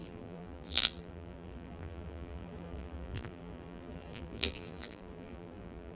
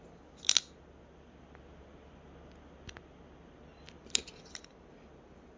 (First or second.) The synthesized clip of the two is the first